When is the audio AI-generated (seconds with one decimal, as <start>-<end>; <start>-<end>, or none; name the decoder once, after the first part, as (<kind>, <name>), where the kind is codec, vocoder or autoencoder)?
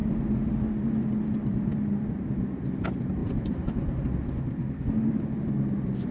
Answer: 1.5-2.2 (vocoder, BigVGAN v2); 3.2-3.8